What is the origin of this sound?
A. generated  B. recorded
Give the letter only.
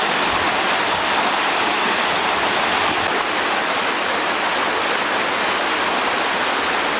B